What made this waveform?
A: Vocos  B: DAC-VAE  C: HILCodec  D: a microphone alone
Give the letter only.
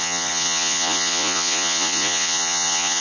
A